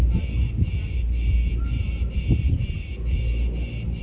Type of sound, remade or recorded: recorded